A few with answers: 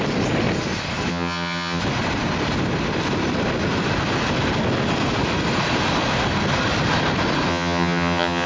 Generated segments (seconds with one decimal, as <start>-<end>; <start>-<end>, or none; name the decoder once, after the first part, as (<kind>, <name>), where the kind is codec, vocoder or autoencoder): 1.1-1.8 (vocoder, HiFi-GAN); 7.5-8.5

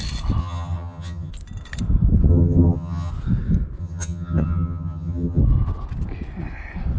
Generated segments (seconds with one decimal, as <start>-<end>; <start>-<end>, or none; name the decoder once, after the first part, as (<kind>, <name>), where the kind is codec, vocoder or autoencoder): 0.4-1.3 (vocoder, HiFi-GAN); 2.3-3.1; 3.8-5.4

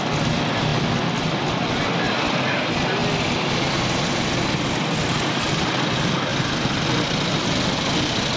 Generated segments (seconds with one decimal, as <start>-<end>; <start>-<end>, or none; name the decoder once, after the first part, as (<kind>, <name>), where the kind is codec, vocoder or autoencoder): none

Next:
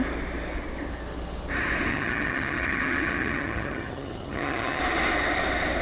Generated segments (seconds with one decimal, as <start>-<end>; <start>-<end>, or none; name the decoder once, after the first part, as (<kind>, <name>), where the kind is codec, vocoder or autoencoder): 1.9-4.8 (vocoder, HiFi-GAN)

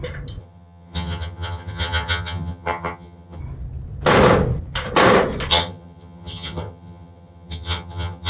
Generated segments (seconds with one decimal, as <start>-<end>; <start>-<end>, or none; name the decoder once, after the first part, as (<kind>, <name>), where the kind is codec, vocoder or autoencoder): 0.4-3.4 (vocoder, HiFi-GAN); 5.5-8.3

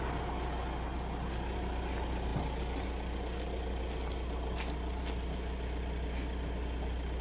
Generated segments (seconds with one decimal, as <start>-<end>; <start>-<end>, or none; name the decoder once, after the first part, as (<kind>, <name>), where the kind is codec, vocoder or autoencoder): none

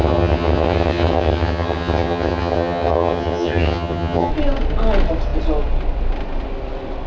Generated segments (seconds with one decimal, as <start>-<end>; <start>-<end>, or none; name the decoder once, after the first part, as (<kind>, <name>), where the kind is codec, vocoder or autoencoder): 0.0-4.3 (vocoder, HiFi-GAN)